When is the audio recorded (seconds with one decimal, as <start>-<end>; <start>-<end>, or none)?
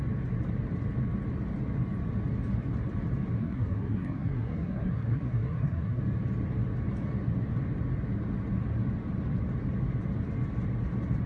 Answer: 0.0-3.4; 6.0-11.3